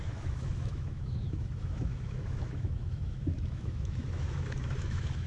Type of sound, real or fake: fake